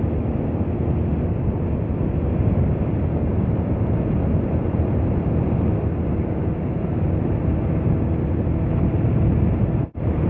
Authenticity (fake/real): real